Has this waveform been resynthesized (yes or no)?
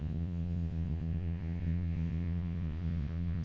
yes